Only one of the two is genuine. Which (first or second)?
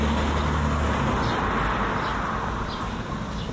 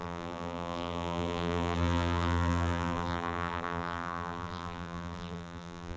first